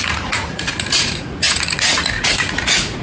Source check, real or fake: fake